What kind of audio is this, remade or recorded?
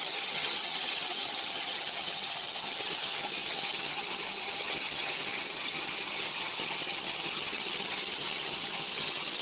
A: remade